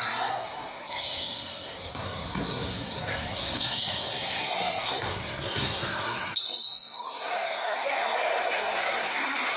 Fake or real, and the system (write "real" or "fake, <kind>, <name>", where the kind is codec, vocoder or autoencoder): fake, codec, SNAC